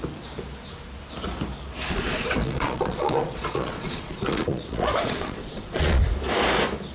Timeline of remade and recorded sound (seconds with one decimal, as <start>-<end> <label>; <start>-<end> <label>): 0.0-1.9 recorded; 1.9-6.0 remade; 6.0-6.9 recorded